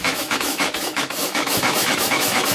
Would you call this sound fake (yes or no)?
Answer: yes